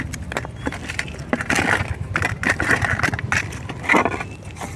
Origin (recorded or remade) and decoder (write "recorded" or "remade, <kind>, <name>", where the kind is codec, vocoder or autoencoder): recorded